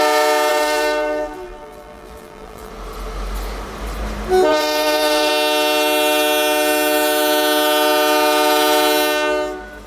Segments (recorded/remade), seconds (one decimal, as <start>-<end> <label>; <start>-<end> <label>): 0.0-0.5 recorded; 0.5-2.7 remade; 2.7-4.5 recorded; 4.5-5.3 remade; 5.3-9.9 recorded